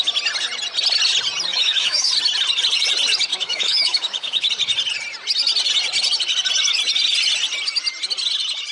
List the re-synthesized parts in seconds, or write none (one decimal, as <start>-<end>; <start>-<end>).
1.5-2.1; 3.3-4.5